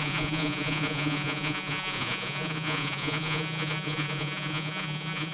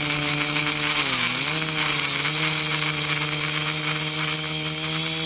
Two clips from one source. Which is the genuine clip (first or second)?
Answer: second